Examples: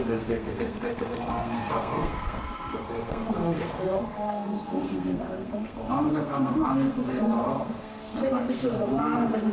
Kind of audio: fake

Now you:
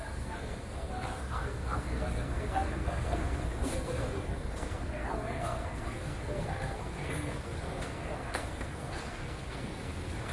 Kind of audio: fake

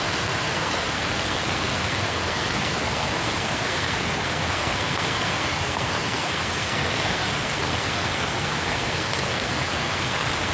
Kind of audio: fake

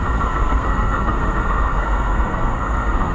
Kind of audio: fake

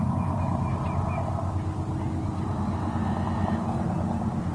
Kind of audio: real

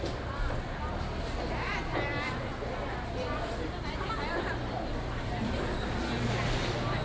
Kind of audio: real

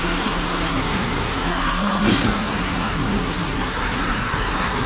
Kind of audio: fake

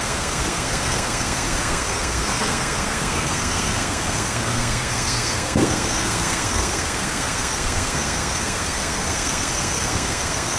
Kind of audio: fake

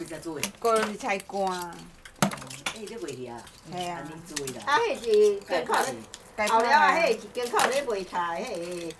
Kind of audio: real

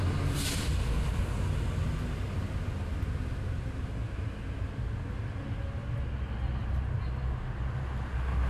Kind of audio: real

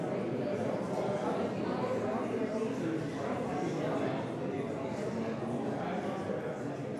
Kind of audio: real